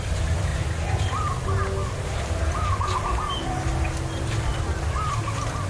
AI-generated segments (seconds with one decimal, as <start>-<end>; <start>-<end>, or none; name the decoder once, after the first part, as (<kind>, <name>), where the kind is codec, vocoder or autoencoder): none